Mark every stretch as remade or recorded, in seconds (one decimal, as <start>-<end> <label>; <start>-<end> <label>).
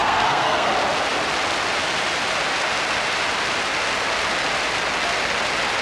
0.0-0.7 remade; 0.7-5.8 recorded